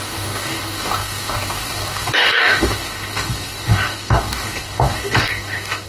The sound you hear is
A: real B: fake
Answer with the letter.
B